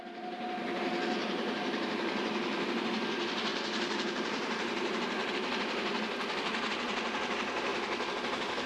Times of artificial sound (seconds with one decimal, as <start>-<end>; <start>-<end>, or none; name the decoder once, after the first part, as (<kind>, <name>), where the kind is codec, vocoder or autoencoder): 1.2-2.8 (vocoder, BigVGAN v2); 3.5-5.3